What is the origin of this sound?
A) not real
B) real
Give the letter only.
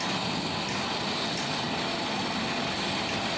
B